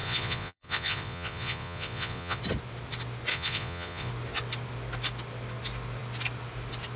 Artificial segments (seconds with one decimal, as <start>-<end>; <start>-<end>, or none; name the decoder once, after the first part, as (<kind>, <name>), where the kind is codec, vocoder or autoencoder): 0.0-2.4 (vocoder, Vocos); 3.3-4.1